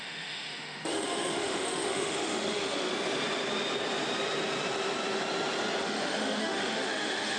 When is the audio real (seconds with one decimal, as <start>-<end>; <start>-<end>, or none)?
2.9-5.8